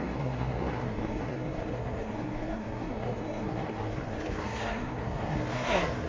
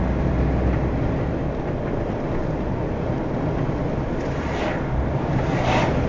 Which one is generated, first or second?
first